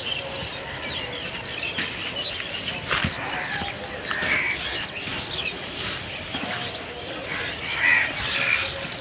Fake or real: real